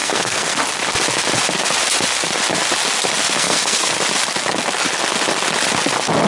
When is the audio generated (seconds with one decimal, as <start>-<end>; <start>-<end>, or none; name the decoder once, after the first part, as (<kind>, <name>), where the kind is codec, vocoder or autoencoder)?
0.0-0.6 (codec, SNAC); 3.2-3.9